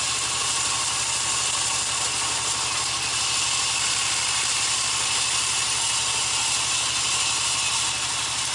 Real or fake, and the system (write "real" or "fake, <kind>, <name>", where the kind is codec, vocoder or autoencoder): real